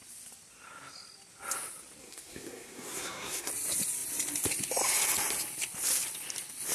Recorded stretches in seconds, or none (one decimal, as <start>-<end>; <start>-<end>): 0.0-2.0; 3.5-6.7

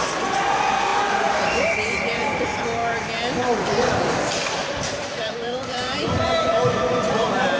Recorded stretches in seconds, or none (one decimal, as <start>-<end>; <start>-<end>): 0.0-4.6